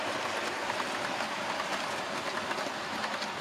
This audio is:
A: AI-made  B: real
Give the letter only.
B